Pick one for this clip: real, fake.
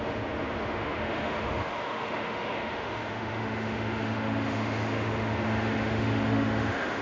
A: fake